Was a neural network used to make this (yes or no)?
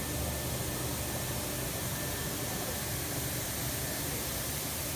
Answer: no